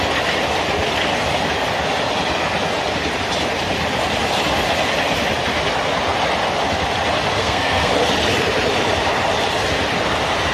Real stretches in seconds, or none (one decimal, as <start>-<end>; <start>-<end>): 0.0-7.4; 7.9-10.5